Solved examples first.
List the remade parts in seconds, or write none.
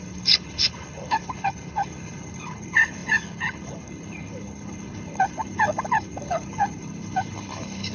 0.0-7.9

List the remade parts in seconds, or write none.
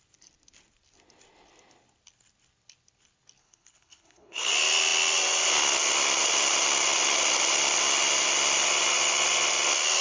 3.4-4.5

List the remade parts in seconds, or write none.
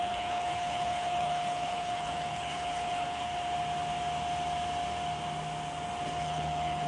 0.0-3.3; 6.2-6.9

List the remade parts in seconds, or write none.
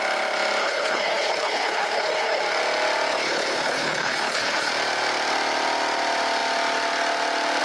0.6-2.4; 3.1-4.7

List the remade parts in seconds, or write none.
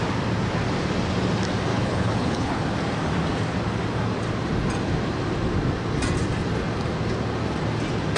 1.7-2.6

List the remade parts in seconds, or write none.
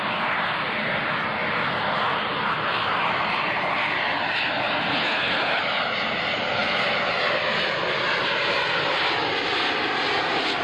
4.9-5.6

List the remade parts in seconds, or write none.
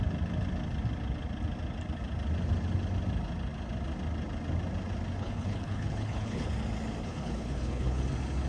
5.2-6.5; 7.0-8.0